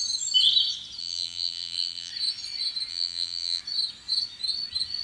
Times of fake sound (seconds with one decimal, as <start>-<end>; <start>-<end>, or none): 1.0-2.1; 2.9-3.6